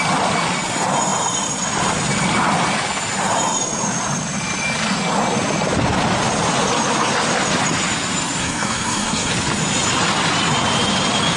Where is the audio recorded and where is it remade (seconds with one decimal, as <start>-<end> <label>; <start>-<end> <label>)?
0.0-8.4 recorded; 8.4-9.3 remade; 9.3-11.4 recorded